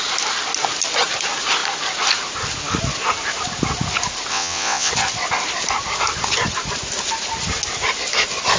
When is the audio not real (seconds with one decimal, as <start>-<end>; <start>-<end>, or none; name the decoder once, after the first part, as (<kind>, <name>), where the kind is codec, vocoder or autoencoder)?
4.3-4.9 (vocoder, WaveNeXt)